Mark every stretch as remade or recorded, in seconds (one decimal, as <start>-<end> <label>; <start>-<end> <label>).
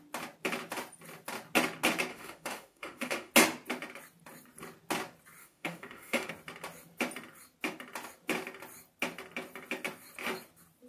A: 0.0-2.1 recorded; 2.1-3.3 remade; 3.3-5.4 recorded; 5.4-6.3 remade; 6.3-10.9 recorded